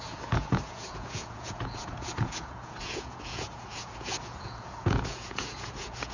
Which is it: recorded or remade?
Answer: remade